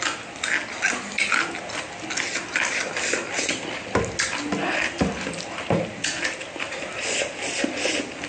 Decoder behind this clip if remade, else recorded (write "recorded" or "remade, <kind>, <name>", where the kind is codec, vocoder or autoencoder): recorded